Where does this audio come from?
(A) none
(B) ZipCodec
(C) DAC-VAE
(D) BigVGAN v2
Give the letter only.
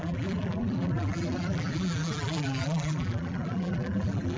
D